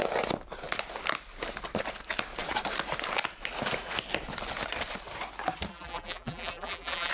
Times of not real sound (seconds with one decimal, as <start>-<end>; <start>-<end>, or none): 5.7-7.1